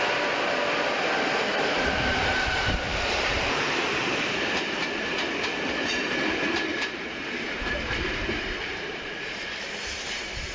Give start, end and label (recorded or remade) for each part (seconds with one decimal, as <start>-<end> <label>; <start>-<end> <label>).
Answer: 0.0-1.5 recorded; 1.5-4.2 remade; 4.2-6.7 recorded; 6.7-9.5 remade; 9.5-10.5 recorded